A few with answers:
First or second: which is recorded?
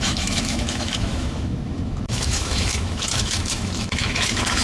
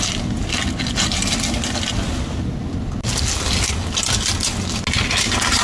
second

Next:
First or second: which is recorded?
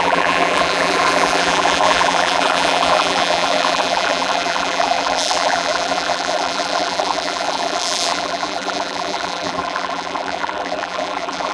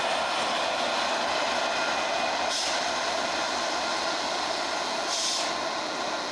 second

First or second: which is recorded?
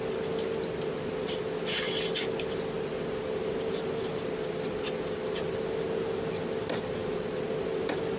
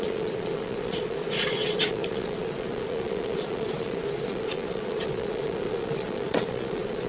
first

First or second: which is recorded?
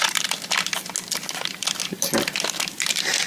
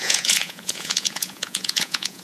first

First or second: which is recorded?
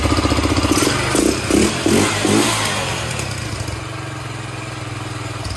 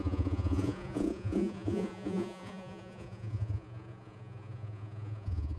first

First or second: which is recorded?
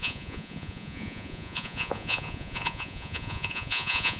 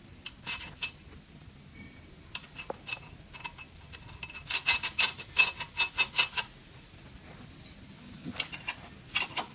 second